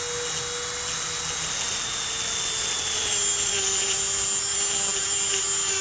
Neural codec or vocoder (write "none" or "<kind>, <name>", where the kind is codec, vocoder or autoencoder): none